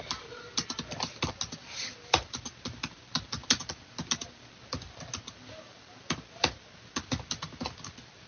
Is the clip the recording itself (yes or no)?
yes